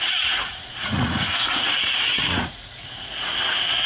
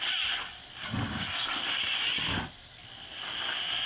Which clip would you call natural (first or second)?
second